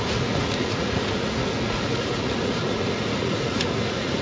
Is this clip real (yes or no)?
no